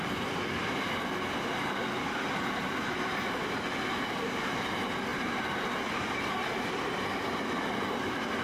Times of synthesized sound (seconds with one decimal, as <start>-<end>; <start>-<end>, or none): none

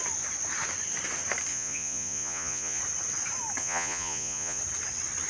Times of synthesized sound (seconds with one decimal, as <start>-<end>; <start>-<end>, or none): 1.5-2.8; 3.6-4.6

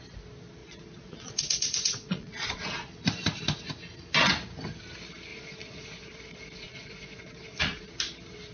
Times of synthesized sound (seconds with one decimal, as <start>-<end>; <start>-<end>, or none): 0.6-2.9; 5.3-7.9

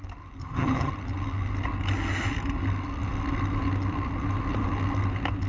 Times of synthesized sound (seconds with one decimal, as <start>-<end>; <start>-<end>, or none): 0.4-0.9

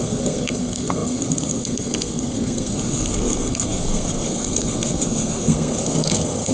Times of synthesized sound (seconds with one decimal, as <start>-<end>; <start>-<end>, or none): 0.0-6.5

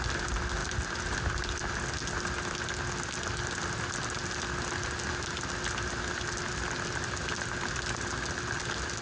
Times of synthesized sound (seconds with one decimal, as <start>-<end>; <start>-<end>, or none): none

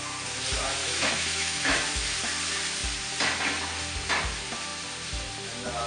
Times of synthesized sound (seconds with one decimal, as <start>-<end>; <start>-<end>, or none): 0.8-1.9